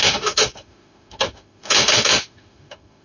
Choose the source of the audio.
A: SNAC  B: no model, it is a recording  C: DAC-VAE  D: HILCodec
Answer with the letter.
C